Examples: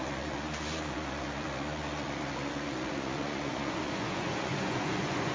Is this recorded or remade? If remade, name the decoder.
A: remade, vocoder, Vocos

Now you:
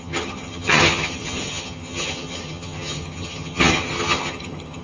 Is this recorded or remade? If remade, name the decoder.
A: remade, vocoder, HiFi-GAN